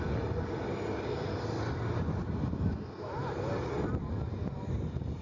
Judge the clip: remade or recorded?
recorded